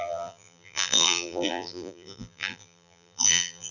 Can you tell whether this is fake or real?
fake